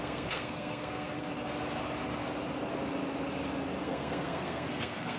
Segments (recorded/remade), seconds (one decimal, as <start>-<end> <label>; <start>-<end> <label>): 0.0-1.3 remade; 1.3-3.8 recorded; 3.8-5.2 remade